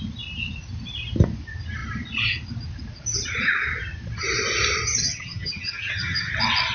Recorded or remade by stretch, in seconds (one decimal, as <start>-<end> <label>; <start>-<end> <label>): 0.0-5.0 recorded; 5.0-6.3 remade; 6.3-6.7 recorded